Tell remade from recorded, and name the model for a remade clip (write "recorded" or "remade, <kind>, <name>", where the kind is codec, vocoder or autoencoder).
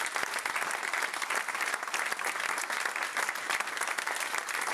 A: recorded